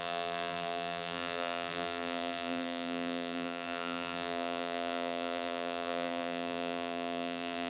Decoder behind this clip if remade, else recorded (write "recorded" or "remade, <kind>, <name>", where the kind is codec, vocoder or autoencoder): remade, vocoder, BigVGAN v2